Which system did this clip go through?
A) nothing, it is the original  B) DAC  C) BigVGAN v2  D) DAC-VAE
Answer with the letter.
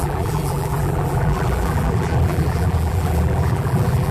C